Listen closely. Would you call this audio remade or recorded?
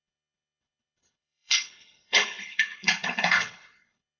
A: remade